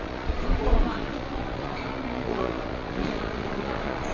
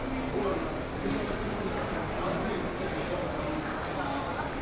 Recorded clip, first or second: second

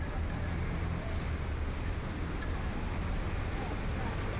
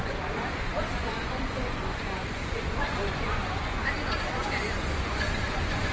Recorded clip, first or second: first